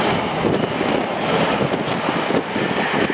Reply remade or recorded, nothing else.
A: recorded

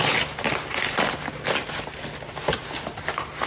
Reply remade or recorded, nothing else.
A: recorded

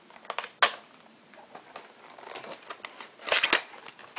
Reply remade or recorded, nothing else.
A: recorded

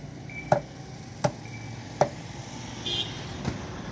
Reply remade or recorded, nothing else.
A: recorded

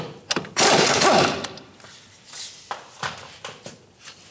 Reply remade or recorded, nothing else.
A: recorded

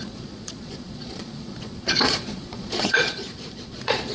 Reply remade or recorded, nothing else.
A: remade